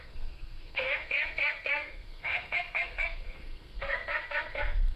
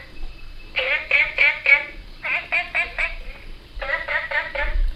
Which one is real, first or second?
second